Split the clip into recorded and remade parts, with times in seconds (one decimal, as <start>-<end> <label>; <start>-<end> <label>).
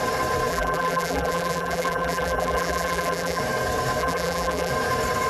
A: 0.0-0.5 recorded; 0.5-3.4 remade; 3.4-4.0 recorded; 4.0-4.7 remade; 4.7-5.3 recorded